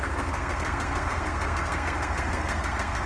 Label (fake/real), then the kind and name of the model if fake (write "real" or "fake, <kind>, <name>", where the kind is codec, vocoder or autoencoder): fake, codec, SNAC